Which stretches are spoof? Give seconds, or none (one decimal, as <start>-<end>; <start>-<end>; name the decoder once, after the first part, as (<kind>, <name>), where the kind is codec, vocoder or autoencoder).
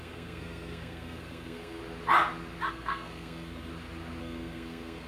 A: 0.0-1.8 (codec, SNAC); 2.7-3.7; 4.2-5.1